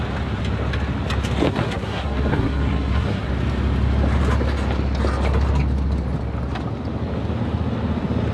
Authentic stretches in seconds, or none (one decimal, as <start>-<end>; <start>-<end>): 0.0-1.5; 3.3-8.3